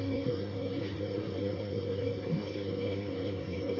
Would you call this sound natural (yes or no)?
no